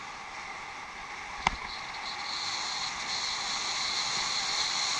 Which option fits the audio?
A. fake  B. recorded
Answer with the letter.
B